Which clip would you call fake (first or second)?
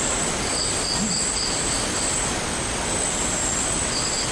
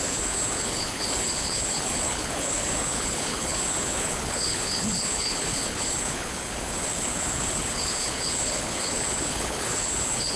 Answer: second